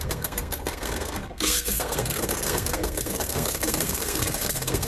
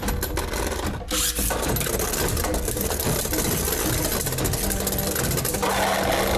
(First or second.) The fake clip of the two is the first